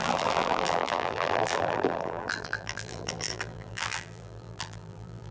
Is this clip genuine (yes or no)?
no